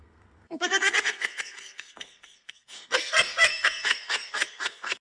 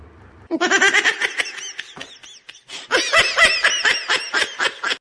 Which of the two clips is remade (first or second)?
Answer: first